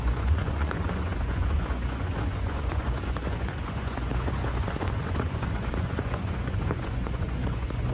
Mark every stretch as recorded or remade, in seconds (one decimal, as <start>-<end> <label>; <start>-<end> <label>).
0.0-7.9 remade